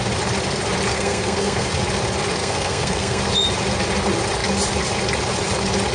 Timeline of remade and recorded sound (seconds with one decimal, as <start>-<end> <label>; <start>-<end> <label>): 0.0-0.9 recorded; 0.9-1.7 remade; 1.7-2.4 recorded; 2.4-3.2 remade; 3.2-5.9 recorded